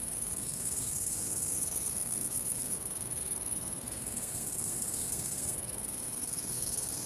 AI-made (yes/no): yes